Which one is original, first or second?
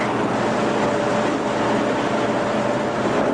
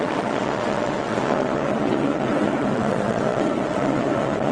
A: first